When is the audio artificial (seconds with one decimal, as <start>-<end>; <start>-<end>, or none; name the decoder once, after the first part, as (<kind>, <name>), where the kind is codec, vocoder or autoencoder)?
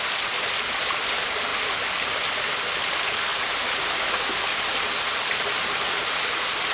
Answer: none